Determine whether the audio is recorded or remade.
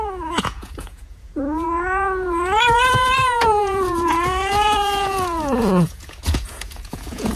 remade